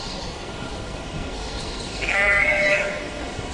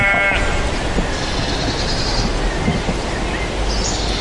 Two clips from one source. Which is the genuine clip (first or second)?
second